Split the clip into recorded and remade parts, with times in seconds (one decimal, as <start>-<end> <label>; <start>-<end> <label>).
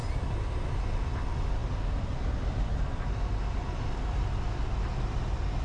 0.0-5.6 recorded